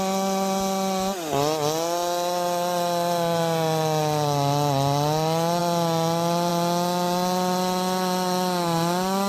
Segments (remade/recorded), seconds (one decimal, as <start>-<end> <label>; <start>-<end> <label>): 0.0-9.3 recorded